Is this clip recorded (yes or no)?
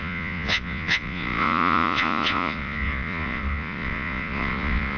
no